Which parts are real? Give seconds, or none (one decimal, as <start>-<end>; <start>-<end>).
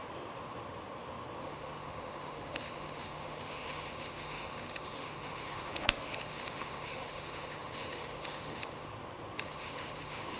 0.0-1.4; 8.9-9.4